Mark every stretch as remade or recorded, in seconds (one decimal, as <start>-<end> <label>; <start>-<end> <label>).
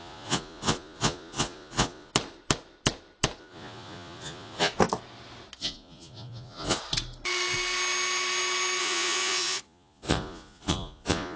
0.0-2.1 remade; 2.1-3.4 recorded; 3.4-4.7 remade; 4.7-5.6 recorded; 5.6-6.8 remade; 6.8-8.8 recorded; 8.8-11.4 remade